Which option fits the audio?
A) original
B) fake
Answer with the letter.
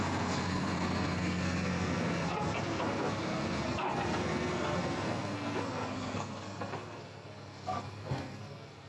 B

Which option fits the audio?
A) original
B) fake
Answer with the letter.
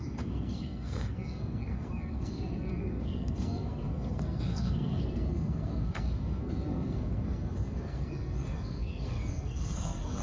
B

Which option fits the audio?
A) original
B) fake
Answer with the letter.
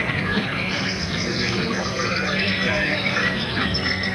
B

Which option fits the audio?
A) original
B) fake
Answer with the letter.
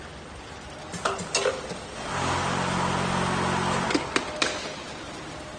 A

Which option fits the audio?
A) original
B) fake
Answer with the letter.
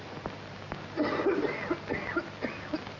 A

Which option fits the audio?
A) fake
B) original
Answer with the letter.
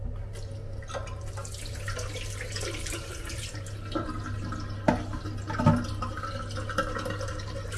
B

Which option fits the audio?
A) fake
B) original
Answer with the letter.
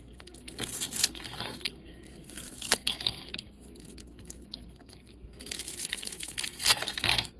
A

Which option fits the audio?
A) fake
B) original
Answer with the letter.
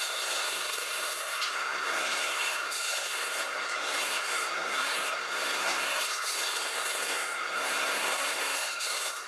A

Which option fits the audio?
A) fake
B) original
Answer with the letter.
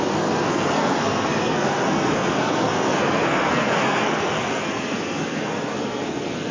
A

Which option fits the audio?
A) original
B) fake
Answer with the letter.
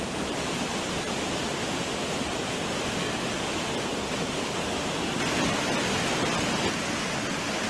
A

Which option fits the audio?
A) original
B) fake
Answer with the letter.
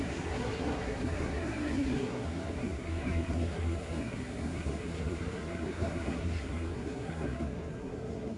B